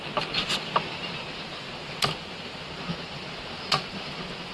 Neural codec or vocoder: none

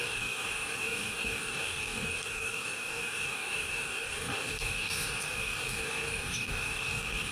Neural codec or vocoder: codec, DAC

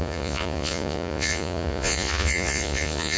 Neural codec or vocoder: vocoder, Vocos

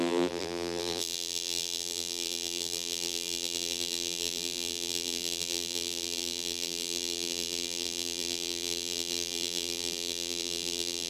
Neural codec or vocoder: vocoder, BigVGAN v2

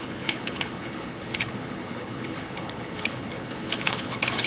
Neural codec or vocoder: codec, HILCodec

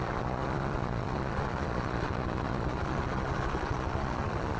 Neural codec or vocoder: vocoder, Vocos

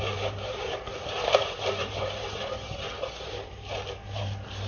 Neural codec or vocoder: vocoder, BigVGAN v2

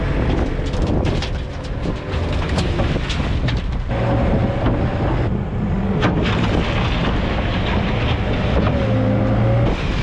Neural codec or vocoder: none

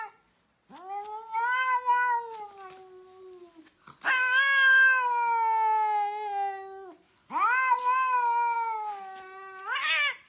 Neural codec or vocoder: none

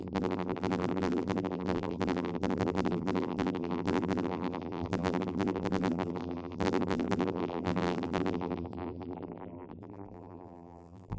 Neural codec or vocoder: vocoder, BigVGAN v2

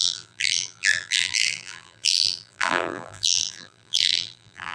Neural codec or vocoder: vocoder, BigVGAN v2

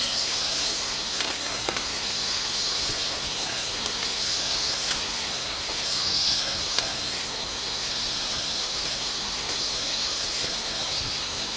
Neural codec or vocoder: codec, SNAC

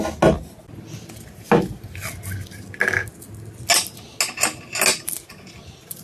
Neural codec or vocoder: none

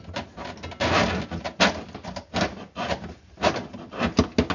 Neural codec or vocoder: none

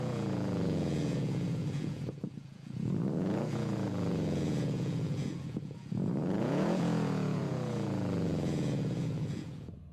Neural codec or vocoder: vocoder, Vocos